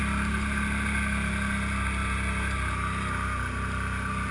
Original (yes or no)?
yes